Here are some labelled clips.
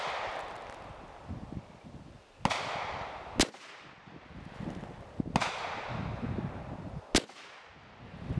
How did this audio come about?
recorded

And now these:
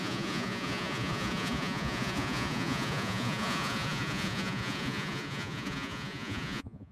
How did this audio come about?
remade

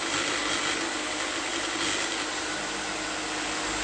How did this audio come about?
recorded